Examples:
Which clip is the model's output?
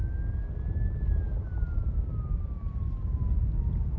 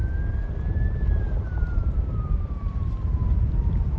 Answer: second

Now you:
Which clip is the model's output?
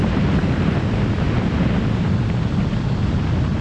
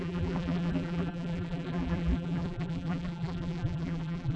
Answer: second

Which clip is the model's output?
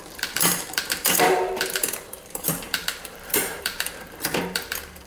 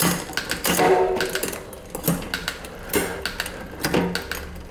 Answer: first